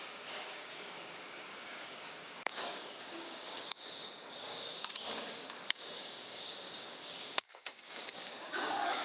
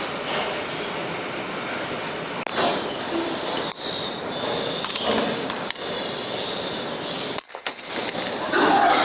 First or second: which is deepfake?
first